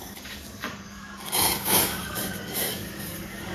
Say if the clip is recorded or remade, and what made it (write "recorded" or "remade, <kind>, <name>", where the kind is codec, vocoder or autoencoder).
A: remade, codec, DAC